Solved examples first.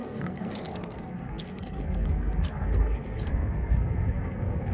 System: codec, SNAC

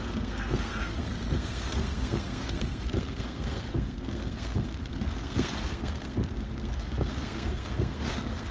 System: codec, SNAC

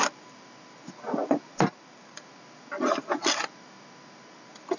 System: none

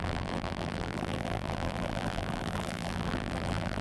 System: vocoder, BigVGAN v2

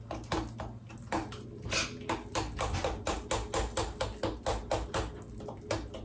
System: none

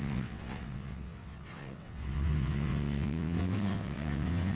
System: vocoder, WaveNeXt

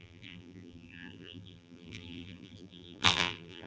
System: vocoder, BigVGAN v2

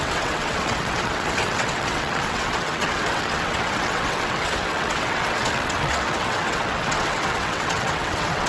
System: vocoder, WaveNeXt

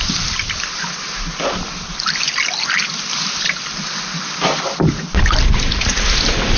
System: none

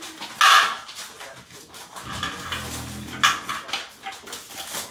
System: none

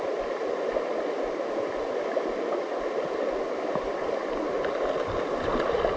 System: none